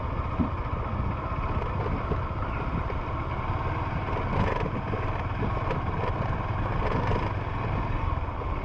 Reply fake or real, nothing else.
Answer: real